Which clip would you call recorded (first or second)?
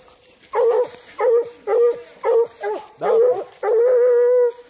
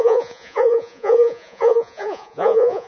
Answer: first